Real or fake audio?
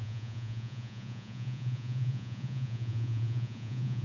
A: fake